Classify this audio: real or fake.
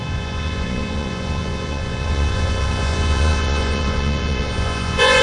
fake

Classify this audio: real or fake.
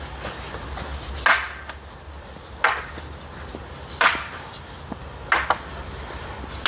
real